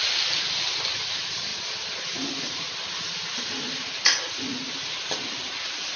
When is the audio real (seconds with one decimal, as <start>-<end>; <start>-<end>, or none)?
0.0-6.0